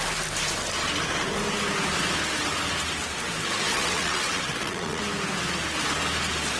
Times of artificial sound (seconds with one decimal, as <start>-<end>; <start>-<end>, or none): 3.7-5.0

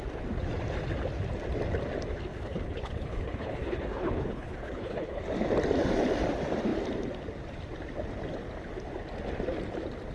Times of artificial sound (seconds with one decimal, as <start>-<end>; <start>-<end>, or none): 2.3-5.2